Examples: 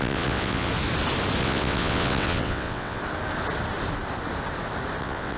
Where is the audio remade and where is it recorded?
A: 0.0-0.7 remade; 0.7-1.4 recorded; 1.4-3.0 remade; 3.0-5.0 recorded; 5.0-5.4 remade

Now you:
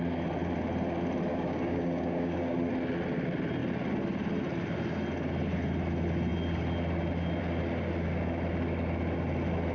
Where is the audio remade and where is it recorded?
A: 0.0-1.3 recorded; 1.3-2.7 remade; 2.7-9.7 recorded

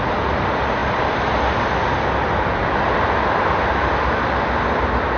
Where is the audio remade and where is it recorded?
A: 0.0-5.2 recorded

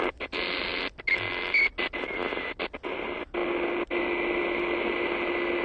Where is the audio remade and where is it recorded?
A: 0.0-5.6 recorded

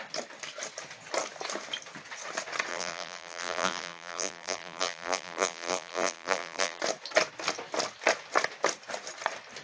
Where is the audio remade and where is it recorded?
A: 0.0-2.7 recorded; 2.7-6.8 remade; 6.8-9.6 recorded

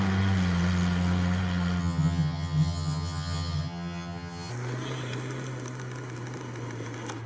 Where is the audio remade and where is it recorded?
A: 0.0-1.8 recorded; 1.8-4.5 remade; 4.5-7.3 recorded

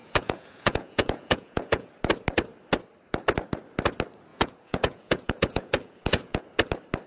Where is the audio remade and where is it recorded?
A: 0.0-1.9 remade; 1.9-4.3 recorded; 4.3-6.4 remade; 6.4-7.1 recorded